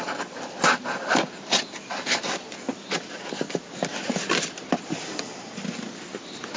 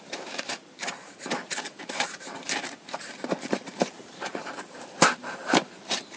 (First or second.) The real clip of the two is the first